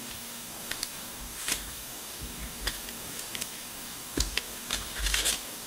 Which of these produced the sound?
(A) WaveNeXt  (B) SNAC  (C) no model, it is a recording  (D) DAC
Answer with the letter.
D